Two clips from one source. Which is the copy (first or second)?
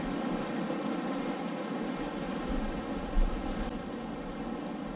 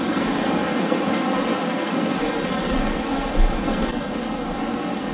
second